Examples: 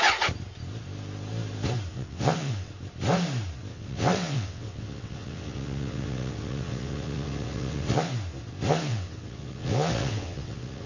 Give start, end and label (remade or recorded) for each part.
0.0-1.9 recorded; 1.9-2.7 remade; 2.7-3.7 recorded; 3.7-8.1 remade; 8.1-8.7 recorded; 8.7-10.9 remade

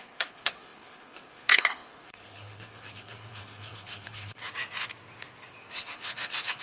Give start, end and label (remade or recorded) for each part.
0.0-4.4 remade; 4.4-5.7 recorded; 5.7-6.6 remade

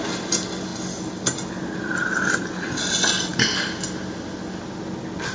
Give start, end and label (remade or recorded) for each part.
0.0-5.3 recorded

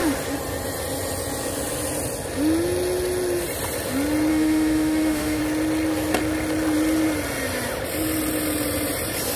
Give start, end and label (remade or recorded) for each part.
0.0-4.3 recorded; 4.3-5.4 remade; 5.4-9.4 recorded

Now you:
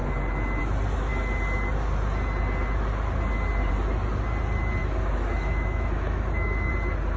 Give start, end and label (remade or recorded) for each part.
0.0-4.8 recorded; 4.8-6.7 remade; 6.7-7.2 recorded

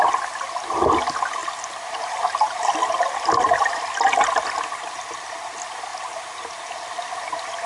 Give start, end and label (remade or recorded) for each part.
0.0-7.7 recorded

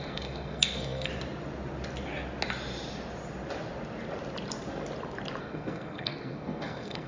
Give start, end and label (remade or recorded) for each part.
0.0-1.1 remade; 1.1-5.4 recorded; 5.4-7.1 remade